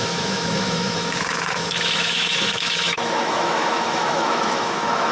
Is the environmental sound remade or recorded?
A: remade